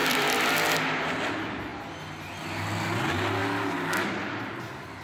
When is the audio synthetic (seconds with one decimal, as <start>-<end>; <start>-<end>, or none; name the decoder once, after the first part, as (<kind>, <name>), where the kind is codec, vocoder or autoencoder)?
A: 0.0-0.5 (vocoder, BigVGAN v2)